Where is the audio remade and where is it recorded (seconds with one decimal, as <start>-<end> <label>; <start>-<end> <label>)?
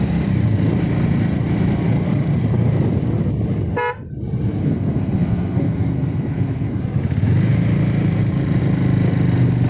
0.0-4.6 recorded; 4.6-6.8 remade; 6.8-9.7 recorded